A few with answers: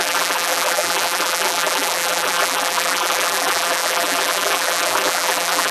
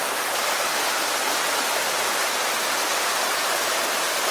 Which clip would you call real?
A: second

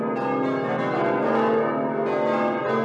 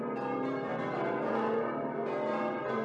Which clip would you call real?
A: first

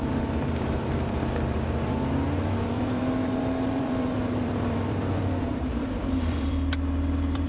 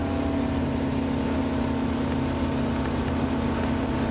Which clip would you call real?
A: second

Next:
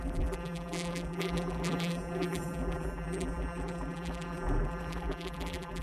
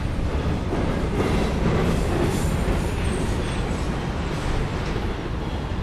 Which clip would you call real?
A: second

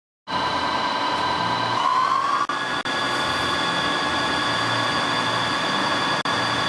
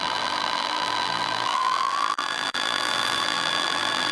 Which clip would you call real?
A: first